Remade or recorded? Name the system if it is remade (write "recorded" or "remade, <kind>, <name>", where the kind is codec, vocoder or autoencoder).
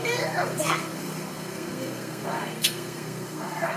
remade, codec, SNAC